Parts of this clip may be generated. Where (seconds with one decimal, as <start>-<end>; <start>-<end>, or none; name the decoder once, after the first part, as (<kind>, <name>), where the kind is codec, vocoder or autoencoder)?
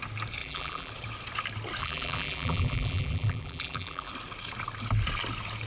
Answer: 0.4-0.9 (vocoder, BigVGAN v2); 1.8-4.1